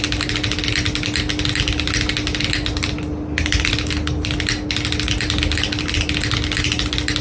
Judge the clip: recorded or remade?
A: recorded